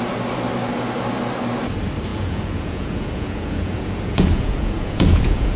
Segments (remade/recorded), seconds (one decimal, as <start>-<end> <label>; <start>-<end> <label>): 0.0-2.1 recorded; 2.1-5.6 remade

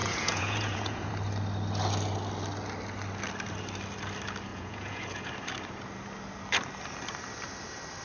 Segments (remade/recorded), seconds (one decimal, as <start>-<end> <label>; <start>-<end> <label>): 0.0-1.1 remade; 1.1-4.5 recorded; 4.5-5.3 remade; 5.3-8.0 recorded

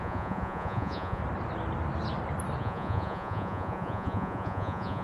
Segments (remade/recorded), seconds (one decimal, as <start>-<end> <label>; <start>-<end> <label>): 0.0-1.2 remade; 1.2-2.6 recorded; 2.6-5.0 remade

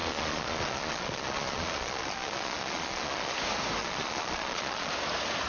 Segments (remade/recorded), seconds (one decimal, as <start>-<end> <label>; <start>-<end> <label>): 0.0-3.3 remade; 3.3-3.8 recorded; 3.8-4.9 remade; 4.9-5.5 recorded

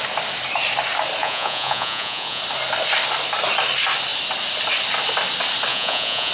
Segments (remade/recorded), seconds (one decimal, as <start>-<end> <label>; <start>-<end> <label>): 0.0-1.2 recorded; 1.2-2.4 remade; 2.4-5.7 recorded; 5.7-6.3 remade

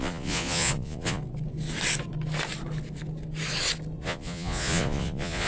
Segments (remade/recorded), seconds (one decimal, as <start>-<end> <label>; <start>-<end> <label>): 0.0-1.2 remade; 1.2-4.0 recorded; 4.0-5.5 remade

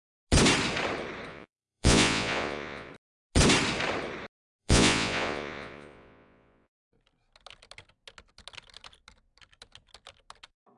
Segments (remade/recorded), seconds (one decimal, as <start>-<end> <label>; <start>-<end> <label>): 0.0-1.3 recorded; 1.3-2.9 remade; 2.9-4.6 recorded; 4.6-6.7 remade; 6.7-10.8 recorded

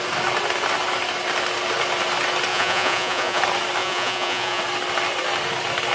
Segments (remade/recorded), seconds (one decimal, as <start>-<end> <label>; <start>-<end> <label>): 0.0-2.5 recorded; 2.5-3.4 remade; 3.4-3.8 recorded; 3.8-4.6 remade; 4.6-5.9 recorded